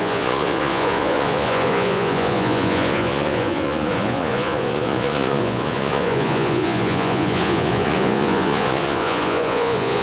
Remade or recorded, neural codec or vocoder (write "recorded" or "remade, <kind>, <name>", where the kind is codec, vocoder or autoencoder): remade, vocoder, Vocos